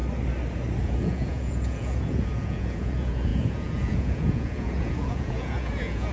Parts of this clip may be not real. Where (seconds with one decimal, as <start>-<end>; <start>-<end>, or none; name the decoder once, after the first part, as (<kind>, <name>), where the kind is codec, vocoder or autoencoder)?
0.8-6.1 (vocoder, Vocos)